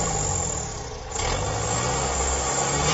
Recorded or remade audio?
recorded